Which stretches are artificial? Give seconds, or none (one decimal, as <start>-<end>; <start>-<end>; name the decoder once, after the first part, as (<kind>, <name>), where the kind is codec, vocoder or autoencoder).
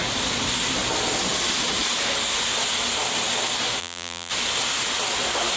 3.8-4.3 (vocoder, BigVGAN v2)